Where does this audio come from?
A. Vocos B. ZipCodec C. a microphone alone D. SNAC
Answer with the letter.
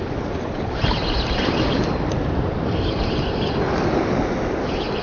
C